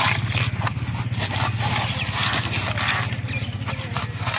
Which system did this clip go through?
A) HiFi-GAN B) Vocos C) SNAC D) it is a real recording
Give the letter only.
D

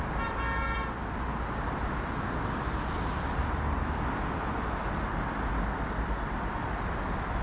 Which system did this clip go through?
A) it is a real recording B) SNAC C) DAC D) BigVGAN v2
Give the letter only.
A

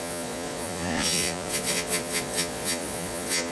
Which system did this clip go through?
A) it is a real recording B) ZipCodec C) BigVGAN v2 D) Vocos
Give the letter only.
D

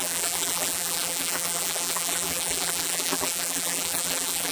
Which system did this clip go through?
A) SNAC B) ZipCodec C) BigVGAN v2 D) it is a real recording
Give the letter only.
C